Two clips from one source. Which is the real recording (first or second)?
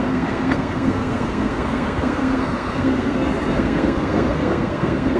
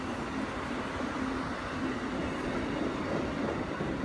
second